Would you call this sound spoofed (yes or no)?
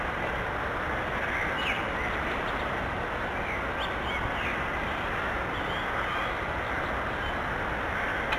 no